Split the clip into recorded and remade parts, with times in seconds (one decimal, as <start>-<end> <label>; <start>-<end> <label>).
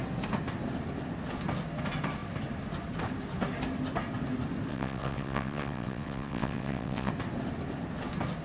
0.0-4.7 recorded; 4.7-7.1 remade; 7.1-8.4 recorded